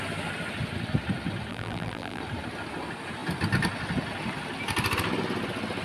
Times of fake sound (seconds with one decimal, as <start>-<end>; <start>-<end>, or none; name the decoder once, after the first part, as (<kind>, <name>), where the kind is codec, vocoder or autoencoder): 1.5-2.2 (vocoder, BigVGAN v2)

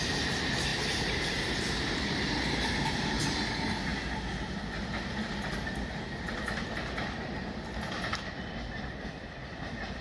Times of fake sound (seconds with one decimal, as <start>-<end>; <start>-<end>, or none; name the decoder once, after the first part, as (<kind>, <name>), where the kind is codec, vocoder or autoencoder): 0.7-3.5 (vocoder, BigVGAN v2)

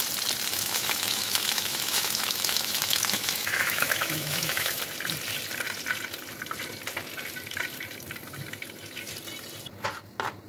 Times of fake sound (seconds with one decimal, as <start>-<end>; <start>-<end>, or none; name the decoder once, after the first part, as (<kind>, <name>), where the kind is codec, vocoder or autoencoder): 0.5-4.8 (autoencoder, DAC-VAE)

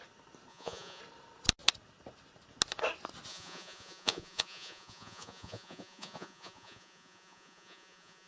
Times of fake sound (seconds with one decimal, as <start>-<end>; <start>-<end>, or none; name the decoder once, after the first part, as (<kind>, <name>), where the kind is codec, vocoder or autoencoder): 0.5-1.0 (vocoder, Vocos); 3.3-8.3

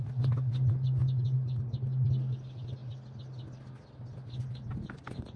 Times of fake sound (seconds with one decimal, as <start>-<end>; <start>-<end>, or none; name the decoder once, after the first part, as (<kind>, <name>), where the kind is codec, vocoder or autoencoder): none

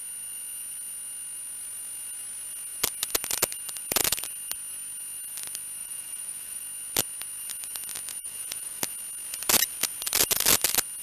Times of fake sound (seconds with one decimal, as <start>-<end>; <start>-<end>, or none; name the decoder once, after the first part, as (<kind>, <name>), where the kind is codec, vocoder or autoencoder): 5.8-6.6 (vocoder, Vocos); 8.1-8.8

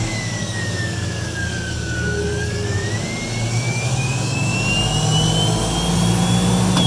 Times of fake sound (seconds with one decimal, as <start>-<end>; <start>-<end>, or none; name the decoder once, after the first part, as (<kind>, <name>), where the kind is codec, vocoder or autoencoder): 0.0-2.8 (codec, DAC); 3.5-4.5